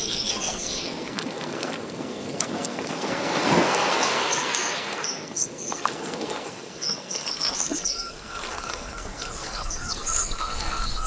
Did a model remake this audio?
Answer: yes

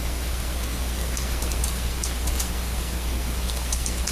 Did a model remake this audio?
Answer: yes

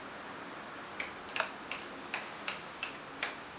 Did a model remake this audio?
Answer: no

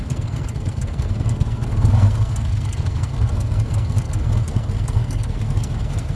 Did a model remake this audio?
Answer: yes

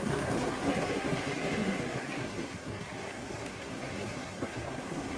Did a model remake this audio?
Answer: yes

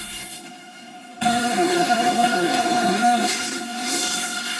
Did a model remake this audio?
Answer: yes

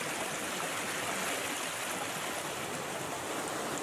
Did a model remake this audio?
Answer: no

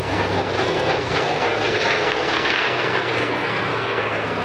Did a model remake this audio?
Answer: yes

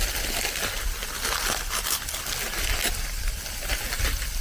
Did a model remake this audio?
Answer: no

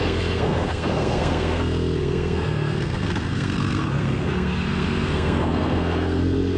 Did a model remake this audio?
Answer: yes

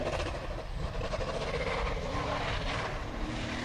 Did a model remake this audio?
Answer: no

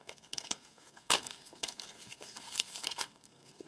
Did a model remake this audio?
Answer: yes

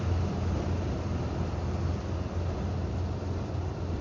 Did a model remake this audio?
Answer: no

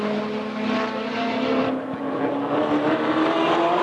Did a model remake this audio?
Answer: no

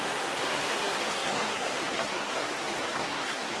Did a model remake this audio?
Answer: yes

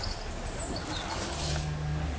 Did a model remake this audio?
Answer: no